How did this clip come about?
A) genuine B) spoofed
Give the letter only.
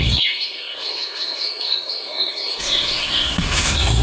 B